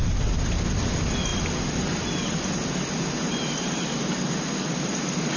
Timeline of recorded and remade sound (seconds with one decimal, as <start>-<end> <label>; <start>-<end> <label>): 0.0-5.4 recorded

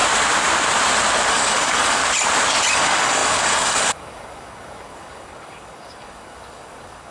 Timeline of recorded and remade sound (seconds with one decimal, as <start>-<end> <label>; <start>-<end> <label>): 0.0-1.3 recorded; 1.3-2.0 remade; 2.0-2.7 recorded; 2.7-7.1 remade

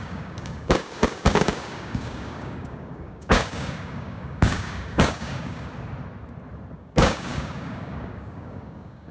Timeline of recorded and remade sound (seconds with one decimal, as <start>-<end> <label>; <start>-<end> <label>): 0.0-5.7 remade; 5.7-6.7 recorded; 6.7-9.1 remade

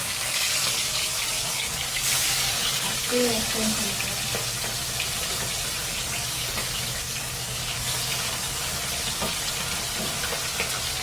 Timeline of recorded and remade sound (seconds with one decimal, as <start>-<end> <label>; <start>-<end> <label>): 0.0-3.4 remade; 3.4-5.8 recorded; 5.8-8.8 remade; 8.8-11.0 recorded